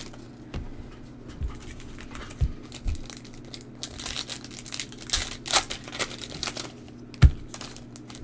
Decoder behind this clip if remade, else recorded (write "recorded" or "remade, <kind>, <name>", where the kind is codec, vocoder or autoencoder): recorded